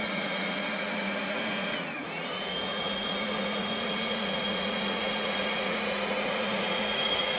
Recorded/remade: remade